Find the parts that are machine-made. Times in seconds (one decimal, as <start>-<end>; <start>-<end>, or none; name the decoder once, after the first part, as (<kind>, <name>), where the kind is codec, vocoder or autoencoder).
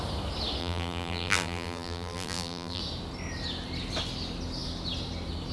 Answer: 0.6-2.8 (vocoder, BigVGAN v2)